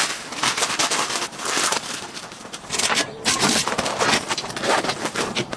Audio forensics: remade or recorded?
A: remade